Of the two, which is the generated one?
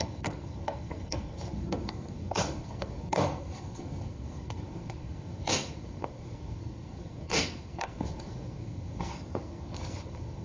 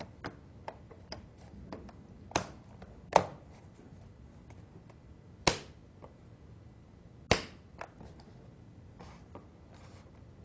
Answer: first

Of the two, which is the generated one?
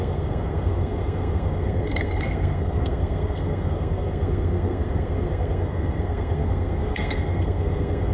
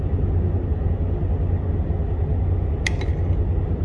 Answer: first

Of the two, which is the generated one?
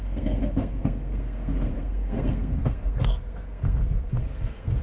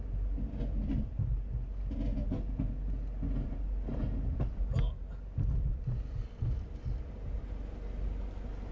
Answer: first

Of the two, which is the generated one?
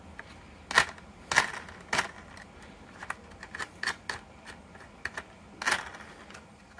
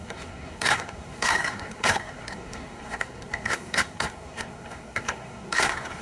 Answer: second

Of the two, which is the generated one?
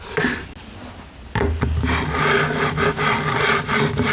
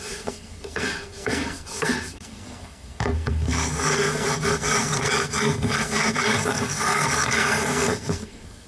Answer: second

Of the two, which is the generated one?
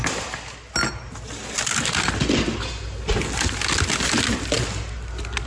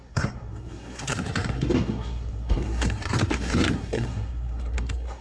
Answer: second